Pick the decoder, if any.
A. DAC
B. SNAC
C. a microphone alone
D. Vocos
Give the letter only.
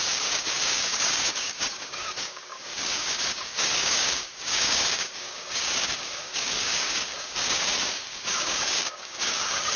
A